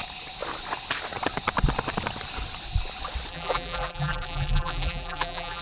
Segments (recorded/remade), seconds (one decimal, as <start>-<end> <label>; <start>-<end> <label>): 0.0-3.3 recorded; 3.3-5.6 remade